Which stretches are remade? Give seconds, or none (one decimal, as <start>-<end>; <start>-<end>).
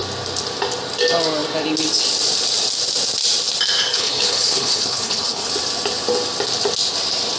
3.9-5.5